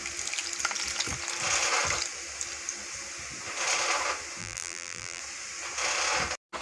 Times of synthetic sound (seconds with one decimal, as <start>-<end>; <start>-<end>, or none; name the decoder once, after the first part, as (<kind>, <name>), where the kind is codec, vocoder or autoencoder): 4.4-5.2 (vocoder, BigVGAN v2)